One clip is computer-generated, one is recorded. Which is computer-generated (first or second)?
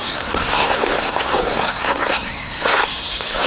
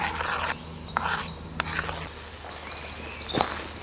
first